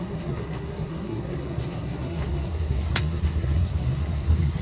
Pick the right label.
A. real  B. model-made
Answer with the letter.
B